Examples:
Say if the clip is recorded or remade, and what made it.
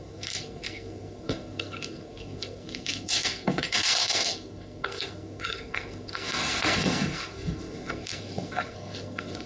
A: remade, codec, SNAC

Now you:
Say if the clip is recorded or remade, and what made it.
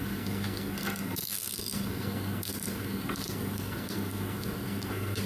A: remade, codec, SNAC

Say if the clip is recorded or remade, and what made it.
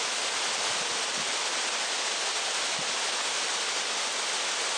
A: recorded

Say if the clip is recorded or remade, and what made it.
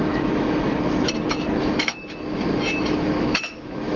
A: remade, autoencoder, DAC-VAE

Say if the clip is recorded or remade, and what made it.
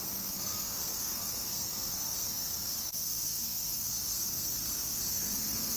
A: remade, codec, SNAC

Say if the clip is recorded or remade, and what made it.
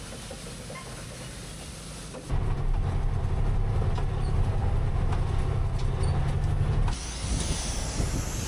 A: recorded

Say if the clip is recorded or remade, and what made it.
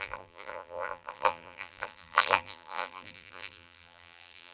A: remade, vocoder, BigVGAN v2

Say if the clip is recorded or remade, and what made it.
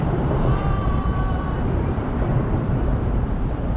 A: remade, vocoder, BigVGAN v2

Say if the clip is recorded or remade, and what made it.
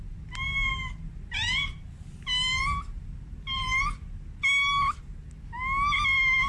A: recorded